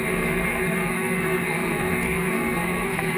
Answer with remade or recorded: remade